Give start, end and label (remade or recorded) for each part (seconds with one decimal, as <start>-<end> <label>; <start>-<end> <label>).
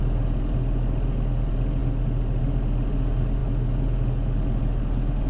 0.0-5.3 recorded